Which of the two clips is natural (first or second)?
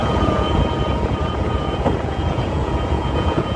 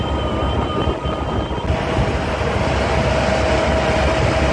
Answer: second